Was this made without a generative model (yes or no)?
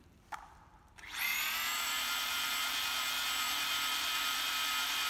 no